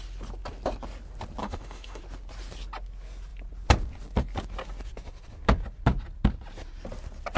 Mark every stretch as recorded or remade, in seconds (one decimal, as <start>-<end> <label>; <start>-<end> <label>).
0.0-1.4 recorded; 1.4-2.0 remade; 2.0-7.4 recorded